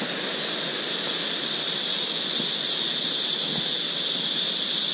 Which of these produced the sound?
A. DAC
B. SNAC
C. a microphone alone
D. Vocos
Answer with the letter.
C